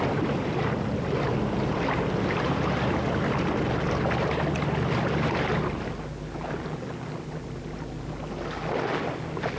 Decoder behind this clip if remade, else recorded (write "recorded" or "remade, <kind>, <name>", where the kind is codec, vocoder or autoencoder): recorded